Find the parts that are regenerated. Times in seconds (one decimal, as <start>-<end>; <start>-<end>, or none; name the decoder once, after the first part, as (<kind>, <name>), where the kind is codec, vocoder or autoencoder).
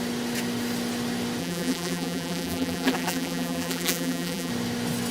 1.4-4.5 (vocoder, BigVGAN v2)